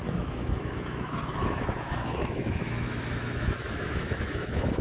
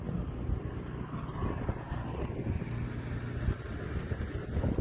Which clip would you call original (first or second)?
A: second